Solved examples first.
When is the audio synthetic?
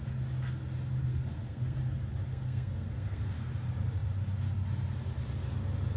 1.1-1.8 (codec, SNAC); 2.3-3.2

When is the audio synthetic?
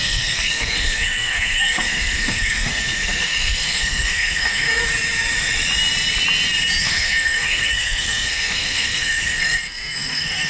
0.0-4.8 (codec, SNAC); 6.8-10.5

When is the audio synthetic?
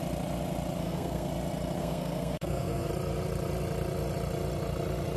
0.8-1.3 (codec, SNAC); 1.8-2.9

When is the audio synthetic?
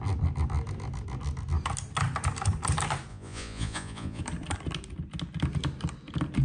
3.1-4.2 (vocoder, Vocos)